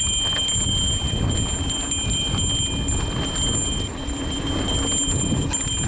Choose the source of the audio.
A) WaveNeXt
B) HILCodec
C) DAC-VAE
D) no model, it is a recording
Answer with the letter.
D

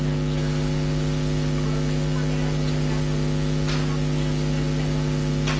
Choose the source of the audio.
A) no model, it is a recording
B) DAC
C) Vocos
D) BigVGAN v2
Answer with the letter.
A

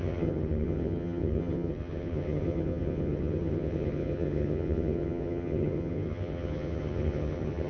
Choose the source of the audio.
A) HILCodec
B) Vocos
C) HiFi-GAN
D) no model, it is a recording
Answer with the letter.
C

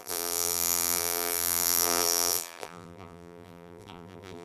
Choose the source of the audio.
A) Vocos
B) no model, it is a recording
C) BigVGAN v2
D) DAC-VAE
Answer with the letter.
C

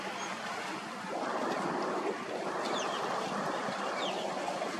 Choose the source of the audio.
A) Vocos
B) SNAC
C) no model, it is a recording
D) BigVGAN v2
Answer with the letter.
C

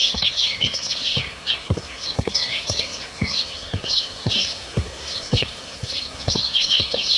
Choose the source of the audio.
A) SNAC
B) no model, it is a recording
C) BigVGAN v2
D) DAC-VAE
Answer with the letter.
A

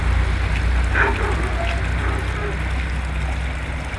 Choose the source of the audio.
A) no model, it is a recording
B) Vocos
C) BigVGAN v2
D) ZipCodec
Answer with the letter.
A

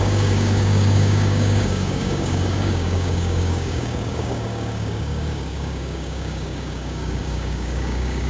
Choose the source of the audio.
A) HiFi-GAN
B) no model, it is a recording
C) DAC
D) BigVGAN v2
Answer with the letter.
C